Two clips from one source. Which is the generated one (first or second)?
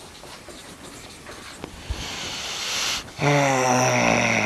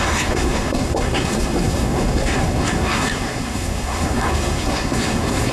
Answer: second